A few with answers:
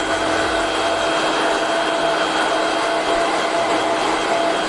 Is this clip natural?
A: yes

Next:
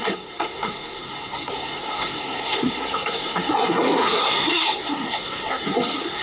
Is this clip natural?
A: no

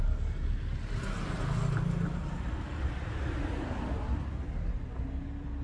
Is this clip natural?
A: yes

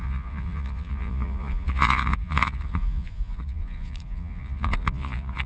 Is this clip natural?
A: no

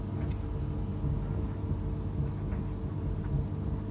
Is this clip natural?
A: yes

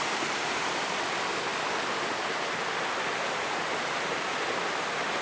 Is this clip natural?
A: yes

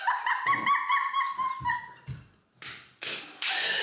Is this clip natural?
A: yes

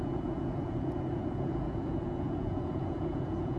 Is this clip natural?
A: no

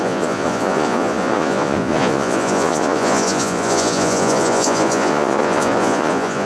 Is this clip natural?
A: no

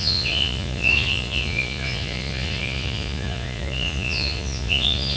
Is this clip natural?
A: no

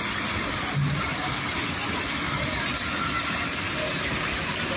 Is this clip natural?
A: yes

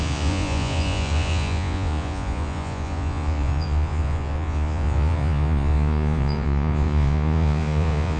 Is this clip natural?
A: no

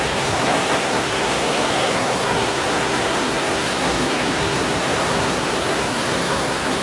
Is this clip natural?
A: no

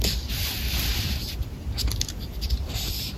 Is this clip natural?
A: no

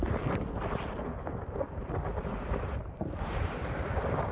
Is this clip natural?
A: yes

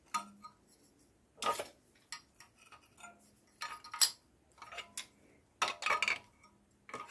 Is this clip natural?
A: yes